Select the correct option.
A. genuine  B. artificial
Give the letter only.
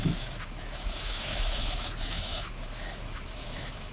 B